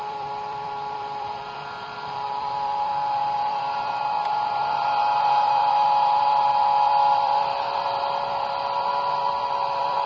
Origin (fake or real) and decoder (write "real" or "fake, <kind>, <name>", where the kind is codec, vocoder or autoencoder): fake, vocoder, BigVGAN v2